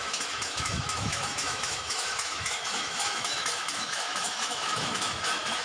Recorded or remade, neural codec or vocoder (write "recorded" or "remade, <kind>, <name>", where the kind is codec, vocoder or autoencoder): remade, autoencoder, DAC-VAE